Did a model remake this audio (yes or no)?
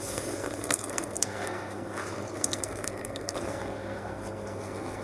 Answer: yes